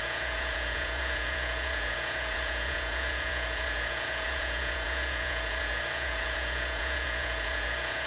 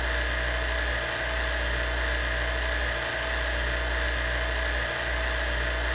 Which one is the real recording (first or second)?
second